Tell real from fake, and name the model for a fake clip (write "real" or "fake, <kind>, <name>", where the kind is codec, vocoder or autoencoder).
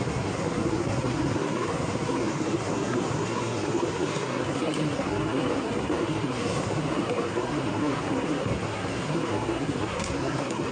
fake, codec, SNAC